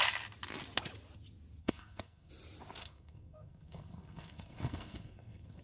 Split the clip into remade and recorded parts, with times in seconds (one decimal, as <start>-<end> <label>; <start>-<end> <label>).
0.0-1.6 recorded; 1.6-2.3 remade; 2.3-2.8 recorded; 2.8-5.6 remade